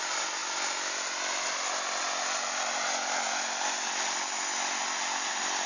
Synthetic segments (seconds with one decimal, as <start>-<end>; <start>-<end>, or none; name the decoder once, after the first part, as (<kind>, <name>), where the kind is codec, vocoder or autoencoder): none